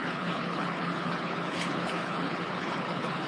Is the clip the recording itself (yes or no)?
no